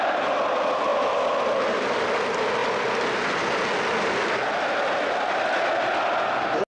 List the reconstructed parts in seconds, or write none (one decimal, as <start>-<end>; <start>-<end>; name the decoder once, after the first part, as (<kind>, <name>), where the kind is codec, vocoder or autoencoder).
none